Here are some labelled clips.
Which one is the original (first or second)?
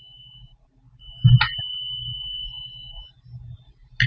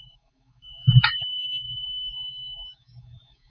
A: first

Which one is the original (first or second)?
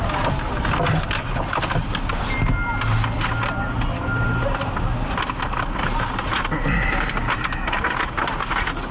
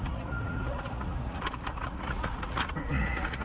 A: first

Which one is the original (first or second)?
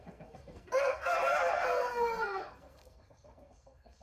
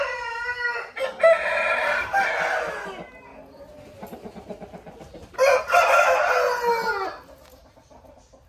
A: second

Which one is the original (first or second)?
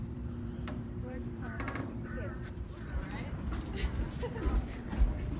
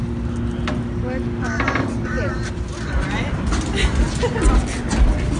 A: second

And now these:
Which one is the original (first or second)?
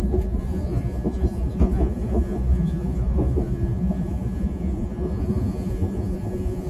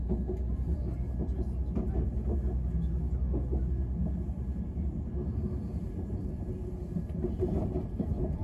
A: second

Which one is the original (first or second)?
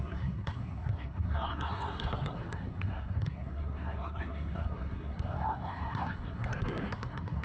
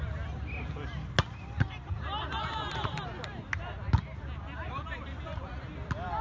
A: second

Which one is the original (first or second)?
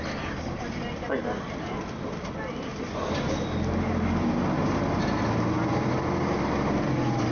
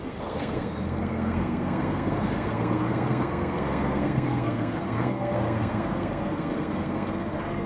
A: first